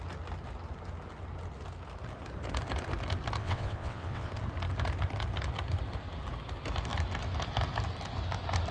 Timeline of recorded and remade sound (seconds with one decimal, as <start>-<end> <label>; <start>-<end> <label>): 0.0-3.4 recorded; 3.4-4.3 remade; 4.3-8.7 recorded